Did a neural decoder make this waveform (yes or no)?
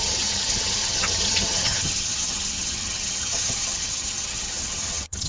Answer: yes